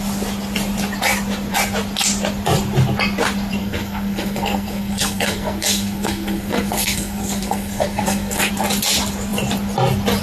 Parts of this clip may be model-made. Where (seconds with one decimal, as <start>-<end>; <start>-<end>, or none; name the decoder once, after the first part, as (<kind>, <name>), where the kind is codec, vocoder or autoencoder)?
3.6-8.5 (codec, SNAC)